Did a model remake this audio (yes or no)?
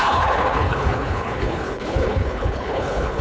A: yes